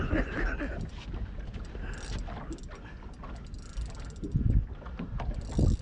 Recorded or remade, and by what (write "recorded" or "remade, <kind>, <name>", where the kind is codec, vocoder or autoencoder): recorded